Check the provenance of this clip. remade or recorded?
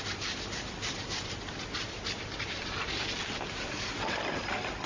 recorded